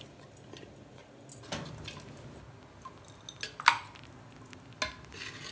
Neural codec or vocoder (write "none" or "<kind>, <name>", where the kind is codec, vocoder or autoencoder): none